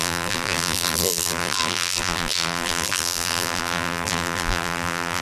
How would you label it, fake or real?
fake